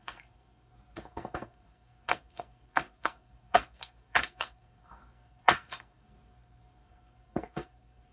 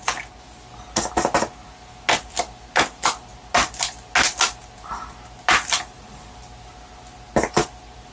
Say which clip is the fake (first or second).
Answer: first